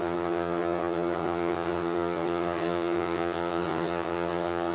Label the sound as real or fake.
fake